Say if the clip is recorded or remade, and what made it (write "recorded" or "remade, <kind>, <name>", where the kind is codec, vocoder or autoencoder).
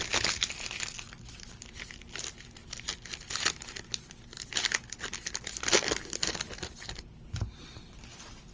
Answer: recorded